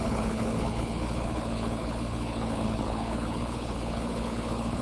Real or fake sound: fake